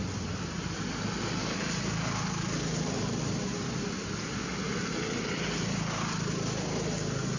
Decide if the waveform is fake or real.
real